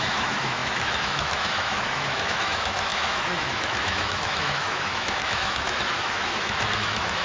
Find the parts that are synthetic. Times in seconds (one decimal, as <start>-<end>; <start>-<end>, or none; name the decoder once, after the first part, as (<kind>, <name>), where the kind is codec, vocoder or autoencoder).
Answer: 0.0-7.2 (autoencoder, DAC-VAE)